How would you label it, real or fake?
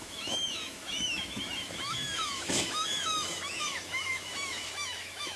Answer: fake